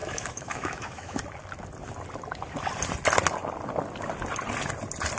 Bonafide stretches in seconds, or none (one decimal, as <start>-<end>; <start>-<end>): 1.2-5.2

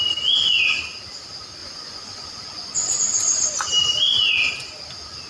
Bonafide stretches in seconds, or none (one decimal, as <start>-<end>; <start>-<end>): 0.0-1.6; 2.9-5.3

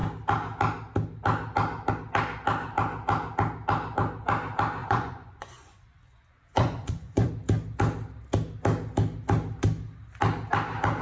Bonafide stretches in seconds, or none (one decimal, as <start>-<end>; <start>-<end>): 0.0-4.8; 7.3-11.0

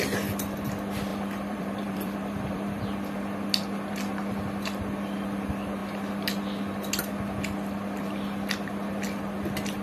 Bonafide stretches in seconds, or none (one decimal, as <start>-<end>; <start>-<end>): 0.0-1.1; 2.8-9.8

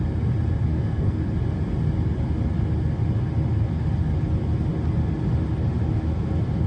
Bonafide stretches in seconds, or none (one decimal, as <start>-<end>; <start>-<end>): 0.0-0.7; 1.2-6.7

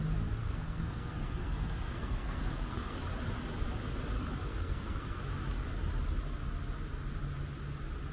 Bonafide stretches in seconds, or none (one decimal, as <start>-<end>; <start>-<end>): 0.0-0.4; 3.0-4.5; 5.2-8.1

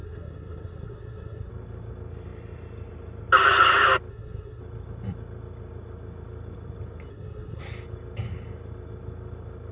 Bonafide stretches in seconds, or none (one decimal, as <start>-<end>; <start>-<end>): 1.5-4.1; 4.6-7.1; 7.6-9.7

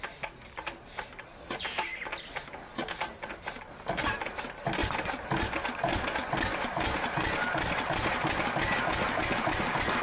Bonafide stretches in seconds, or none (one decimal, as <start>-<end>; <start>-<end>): 0.0-4.8; 5.4-6.2